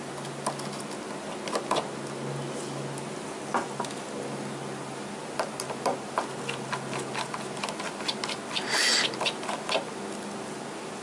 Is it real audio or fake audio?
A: real